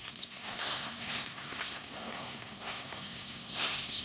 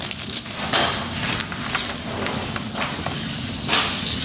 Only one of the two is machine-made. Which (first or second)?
first